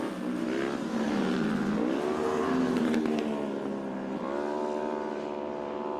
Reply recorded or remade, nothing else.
recorded